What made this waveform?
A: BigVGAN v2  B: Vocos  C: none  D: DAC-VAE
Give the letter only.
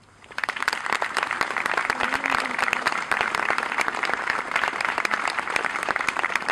A